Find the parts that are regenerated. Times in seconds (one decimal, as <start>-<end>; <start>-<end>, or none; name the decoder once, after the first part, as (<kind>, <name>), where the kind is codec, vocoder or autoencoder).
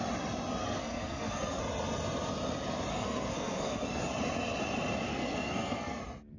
0.6-1.6 (codec, SNAC); 2.9-4.0; 5.1-6.0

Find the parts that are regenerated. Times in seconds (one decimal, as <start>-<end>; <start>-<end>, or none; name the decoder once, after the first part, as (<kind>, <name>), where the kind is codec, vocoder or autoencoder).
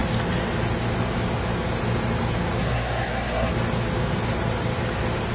2.6-3.5 (codec, SNAC)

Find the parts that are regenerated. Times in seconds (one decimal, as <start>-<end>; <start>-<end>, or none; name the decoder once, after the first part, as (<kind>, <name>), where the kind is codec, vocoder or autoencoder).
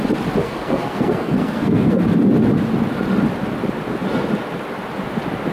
0.4-2.0 (codec, SNAC)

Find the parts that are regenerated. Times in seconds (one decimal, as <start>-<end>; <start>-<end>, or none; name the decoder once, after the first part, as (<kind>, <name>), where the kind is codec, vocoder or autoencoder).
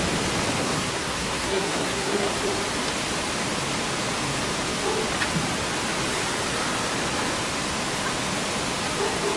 0.6-2.3 (codec, SNAC)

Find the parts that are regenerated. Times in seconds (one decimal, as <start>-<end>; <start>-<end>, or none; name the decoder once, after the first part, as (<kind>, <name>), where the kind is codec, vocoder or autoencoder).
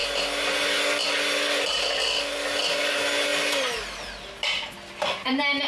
none